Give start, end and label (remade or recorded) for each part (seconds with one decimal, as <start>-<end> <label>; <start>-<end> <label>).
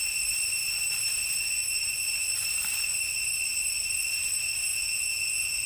0.0-4.7 recorded; 4.7-5.7 remade